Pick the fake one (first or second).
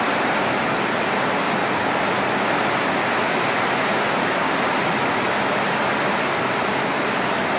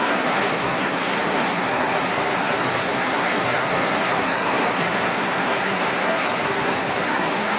second